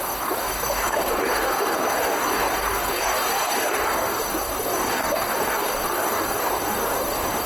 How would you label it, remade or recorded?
remade